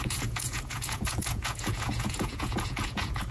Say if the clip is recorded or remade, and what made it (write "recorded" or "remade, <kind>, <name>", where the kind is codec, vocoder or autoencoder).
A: remade, vocoder, Vocos